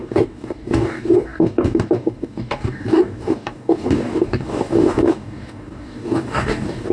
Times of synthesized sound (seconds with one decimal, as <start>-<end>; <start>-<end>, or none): 0.0-6.9